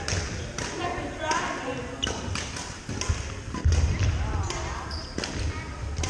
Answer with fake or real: real